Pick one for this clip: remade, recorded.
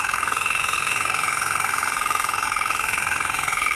remade